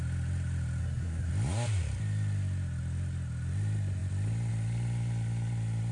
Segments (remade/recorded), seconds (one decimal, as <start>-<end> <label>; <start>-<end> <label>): 0.0-0.8 recorded; 0.8-1.3 remade; 1.3-5.9 recorded